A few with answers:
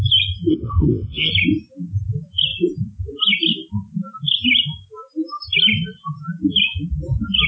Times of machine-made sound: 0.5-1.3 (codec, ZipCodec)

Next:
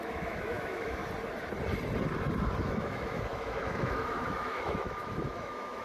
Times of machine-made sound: 0.0-1.0 (autoencoder, DAC-VAE); 2.6-5.8

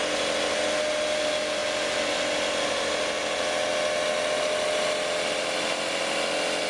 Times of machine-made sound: none

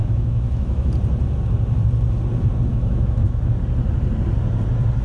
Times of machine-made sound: 0.0-0.9 (autoencoder, DAC-VAE); 2.7-3.4

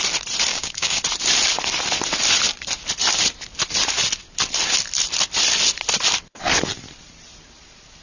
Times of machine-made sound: 0.5-1.0 (codec, DAC)